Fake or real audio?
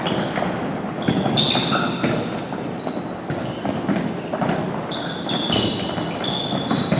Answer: real